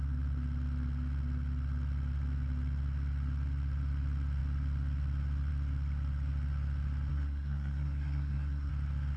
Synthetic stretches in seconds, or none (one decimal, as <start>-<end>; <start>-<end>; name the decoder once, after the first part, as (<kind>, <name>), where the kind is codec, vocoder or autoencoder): 7.1-8.7 (codec, SNAC)